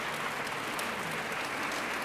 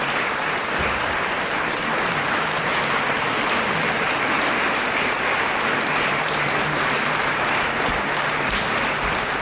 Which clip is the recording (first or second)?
first